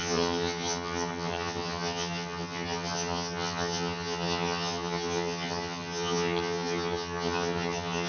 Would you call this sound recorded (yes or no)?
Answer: no